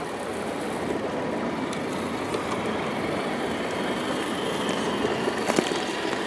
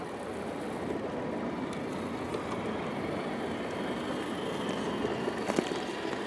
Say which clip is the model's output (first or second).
first